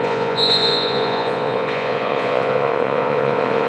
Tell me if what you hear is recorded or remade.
remade